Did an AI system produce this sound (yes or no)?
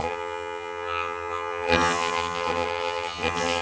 yes